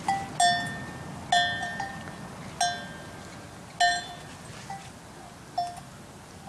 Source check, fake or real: real